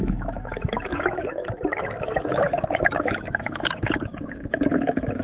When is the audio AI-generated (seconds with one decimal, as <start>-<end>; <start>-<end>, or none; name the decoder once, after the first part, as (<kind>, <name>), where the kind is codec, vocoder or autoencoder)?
0.0-5.2 (autoencoder, DAC-VAE)